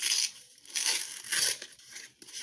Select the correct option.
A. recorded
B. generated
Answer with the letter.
A